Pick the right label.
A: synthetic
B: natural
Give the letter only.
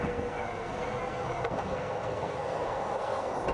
A